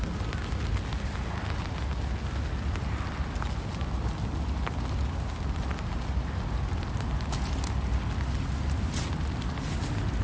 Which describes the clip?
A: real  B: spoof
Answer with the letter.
A